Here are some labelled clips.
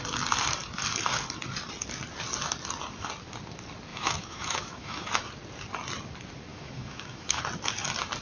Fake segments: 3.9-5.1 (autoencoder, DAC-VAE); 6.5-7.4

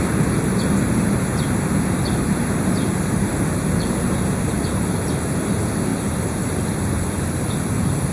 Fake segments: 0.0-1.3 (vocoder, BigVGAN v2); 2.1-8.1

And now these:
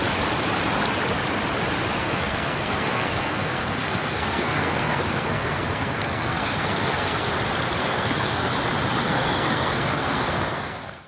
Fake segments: 2.0-7.3 (codec, SNAC); 7.8-8.5; 9.0-11.1